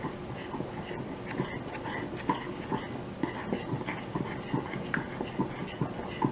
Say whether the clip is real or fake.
real